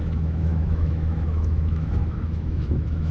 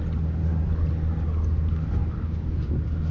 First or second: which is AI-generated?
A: first